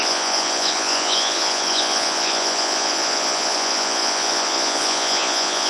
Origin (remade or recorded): remade